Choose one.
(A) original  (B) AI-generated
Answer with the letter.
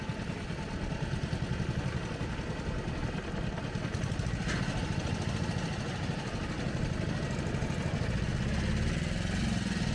A